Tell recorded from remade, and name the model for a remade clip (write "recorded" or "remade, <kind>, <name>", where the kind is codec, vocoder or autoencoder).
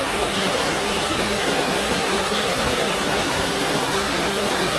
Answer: remade, codec, SNAC